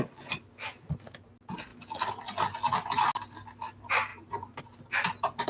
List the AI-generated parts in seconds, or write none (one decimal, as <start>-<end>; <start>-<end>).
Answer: 4.1-4.6